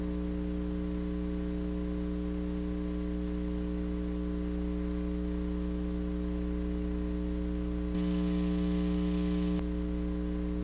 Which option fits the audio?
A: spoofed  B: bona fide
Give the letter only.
B